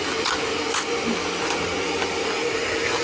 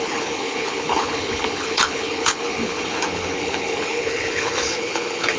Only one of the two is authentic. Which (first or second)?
first